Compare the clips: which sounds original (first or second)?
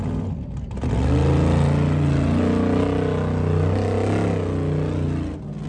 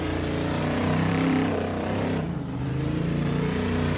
first